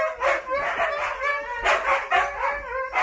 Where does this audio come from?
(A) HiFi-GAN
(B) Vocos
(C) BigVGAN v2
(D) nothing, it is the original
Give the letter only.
D